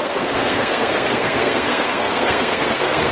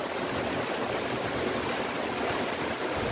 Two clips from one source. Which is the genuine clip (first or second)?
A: second